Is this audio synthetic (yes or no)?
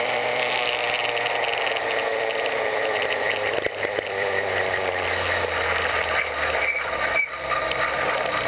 yes